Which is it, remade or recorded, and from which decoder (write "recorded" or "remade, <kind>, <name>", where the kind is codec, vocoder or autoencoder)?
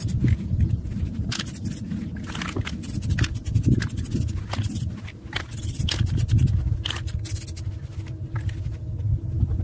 recorded